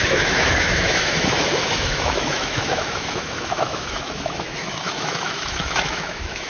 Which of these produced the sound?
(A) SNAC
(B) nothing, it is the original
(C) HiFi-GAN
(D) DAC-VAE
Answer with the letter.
D